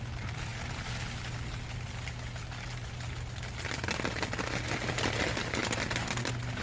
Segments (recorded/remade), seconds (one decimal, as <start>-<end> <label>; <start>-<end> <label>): 0.0-6.6 recorded